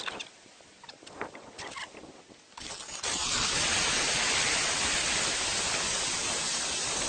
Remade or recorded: recorded